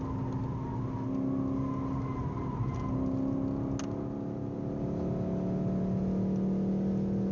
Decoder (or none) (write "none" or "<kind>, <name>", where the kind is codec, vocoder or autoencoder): none